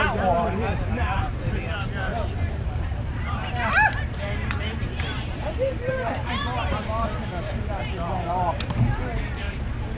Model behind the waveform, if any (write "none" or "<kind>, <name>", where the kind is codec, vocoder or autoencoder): vocoder, BigVGAN v2